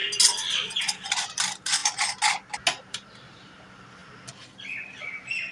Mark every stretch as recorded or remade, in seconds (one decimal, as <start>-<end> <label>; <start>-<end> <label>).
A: 0.0-0.8 recorded; 0.8-1.8 remade; 1.8-2.8 recorded; 2.8-5.5 remade